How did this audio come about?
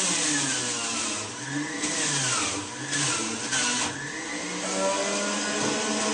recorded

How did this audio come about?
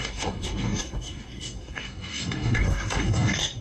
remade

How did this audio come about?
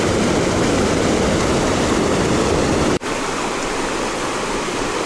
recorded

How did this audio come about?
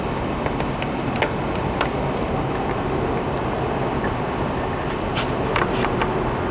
recorded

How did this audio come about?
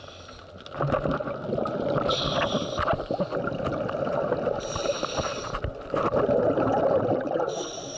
recorded